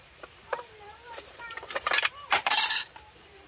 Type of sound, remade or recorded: remade